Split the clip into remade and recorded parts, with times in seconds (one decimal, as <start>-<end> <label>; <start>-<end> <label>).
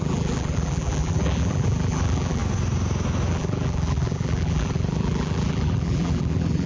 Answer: 0.0-2.4 remade; 2.4-3.3 recorded; 3.3-6.7 remade